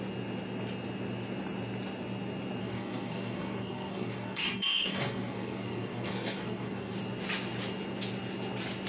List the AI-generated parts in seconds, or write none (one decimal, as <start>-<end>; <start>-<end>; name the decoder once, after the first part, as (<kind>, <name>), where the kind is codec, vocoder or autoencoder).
2.6-7.0 (codec, SNAC)